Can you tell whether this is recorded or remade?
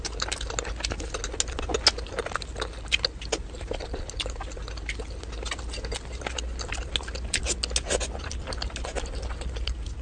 recorded